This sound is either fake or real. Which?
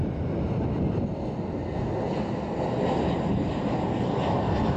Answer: real